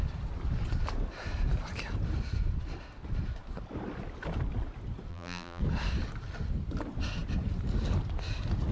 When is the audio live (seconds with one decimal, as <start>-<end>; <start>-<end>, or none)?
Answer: 0.0-5.1; 5.6-8.7